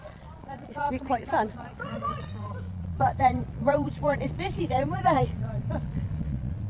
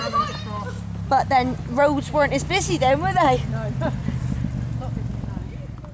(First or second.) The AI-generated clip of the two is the first